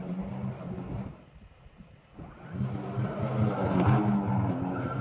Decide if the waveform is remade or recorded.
recorded